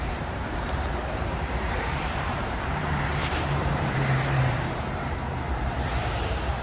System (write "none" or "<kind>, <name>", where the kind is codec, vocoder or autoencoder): vocoder, BigVGAN v2